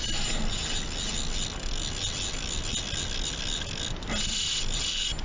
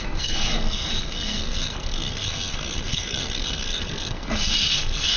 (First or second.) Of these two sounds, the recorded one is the first